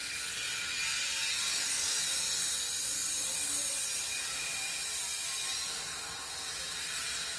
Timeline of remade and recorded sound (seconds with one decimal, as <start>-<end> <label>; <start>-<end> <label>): 0.0-1.3 remade; 1.3-3.0 recorded; 3.0-5.5 remade; 5.5-7.4 recorded